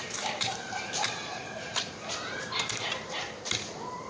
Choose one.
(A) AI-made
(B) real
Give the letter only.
A